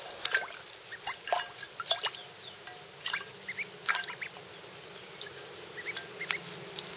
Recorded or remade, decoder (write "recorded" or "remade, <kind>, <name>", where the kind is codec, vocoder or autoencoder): recorded